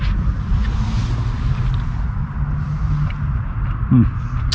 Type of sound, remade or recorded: recorded